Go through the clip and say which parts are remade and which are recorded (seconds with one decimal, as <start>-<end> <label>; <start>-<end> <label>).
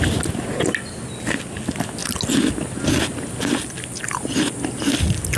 0.0-5.4 recorded